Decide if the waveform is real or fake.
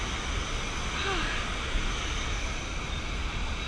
real